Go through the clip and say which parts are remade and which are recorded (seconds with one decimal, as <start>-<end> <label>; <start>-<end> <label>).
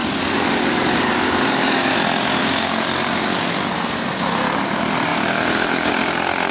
0.0-1.9 remade; 1.9-2.4 recorded; 2.4-3.5 remade; 3.5-5.1 recorded; 5.1-5.9 remade; 5.9-6.5 recorded